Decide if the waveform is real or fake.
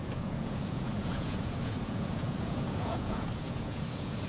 fake